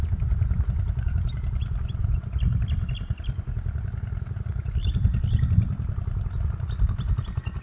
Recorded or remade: recorded